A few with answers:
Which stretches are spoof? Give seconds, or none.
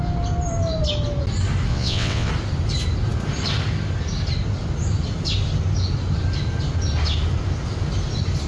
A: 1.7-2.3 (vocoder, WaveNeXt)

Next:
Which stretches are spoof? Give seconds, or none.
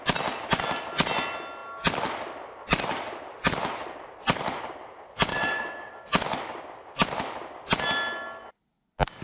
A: 5.3-5.9 (vocoder, WaveNeXt)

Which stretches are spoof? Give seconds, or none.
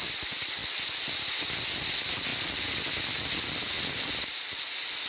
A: none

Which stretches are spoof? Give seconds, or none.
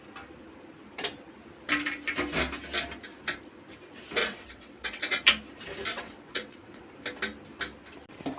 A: 4.2-5.0 (vocoder, WaveNeXt); 5.9-6.8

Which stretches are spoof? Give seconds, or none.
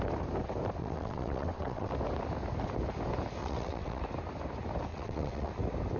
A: 0.8-1.9 (vocoder, WaveNeXt); 3.4-4.0; 4.9-5.5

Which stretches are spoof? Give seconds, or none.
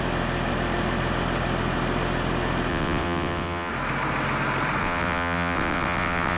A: 2.7-3.7 (vocoder, WaveNeXt); 4.8-6.4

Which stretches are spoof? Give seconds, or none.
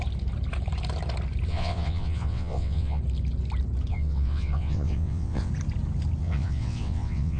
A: 1.5-3.0 (vocoder, WaveNeXt); 3.9-5.5; 6.2-7.4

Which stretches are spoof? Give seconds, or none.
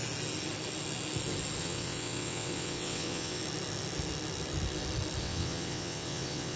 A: 1.6-3.4 (vocoder, WaveNeXt); 5.2-6.6